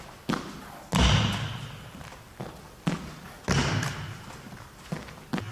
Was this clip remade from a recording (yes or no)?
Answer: no